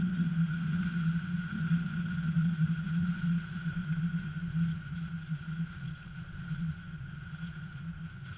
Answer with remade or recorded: remade